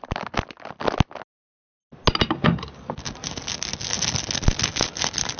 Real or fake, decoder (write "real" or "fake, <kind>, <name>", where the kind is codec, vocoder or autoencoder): real